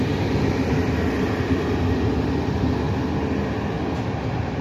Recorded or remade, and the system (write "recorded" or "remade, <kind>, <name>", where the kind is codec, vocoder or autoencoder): recorded